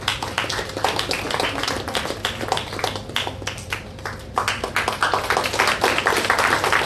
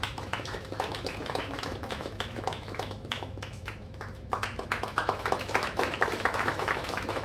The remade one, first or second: second